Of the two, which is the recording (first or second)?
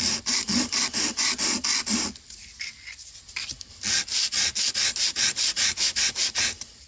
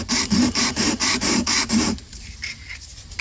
first